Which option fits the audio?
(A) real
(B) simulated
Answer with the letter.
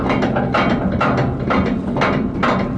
A